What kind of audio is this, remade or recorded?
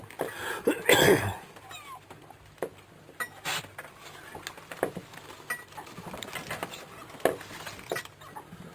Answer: recorded